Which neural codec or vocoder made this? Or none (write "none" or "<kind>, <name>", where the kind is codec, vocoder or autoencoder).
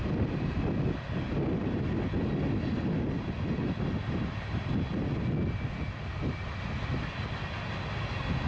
none